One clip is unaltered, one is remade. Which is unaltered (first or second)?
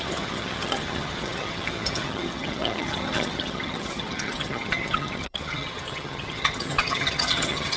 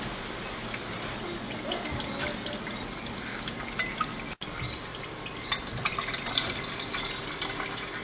second